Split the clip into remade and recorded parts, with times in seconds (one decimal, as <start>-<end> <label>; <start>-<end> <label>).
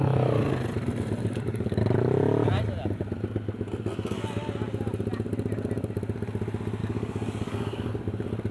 0.0-1.2 recorded; 1.2-1.8 remade; 1.8-6.8 recorded; 6.8-7.9 remade; 7.9-8.5 recorded